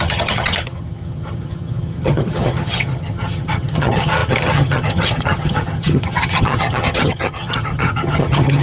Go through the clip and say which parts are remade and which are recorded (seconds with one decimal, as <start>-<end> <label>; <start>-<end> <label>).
0.0-8.6 remade